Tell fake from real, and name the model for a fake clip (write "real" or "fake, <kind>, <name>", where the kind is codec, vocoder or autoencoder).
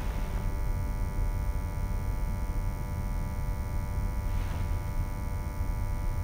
real